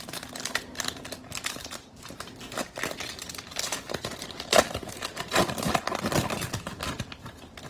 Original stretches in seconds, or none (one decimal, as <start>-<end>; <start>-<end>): 0.0-7.7